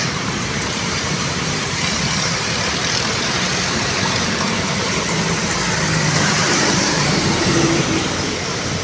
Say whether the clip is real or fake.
fake